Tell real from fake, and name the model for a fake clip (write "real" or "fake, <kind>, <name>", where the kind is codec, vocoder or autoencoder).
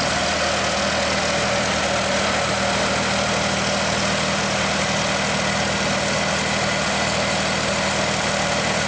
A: real